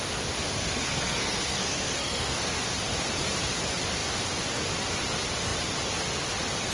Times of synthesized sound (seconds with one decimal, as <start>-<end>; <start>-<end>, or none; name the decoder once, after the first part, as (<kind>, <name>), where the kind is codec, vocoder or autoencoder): 0.4-2.6 (codec, SNAC)